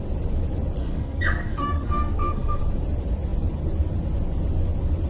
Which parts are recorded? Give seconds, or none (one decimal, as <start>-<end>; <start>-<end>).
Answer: 0.0-0.8; 2.6-5.1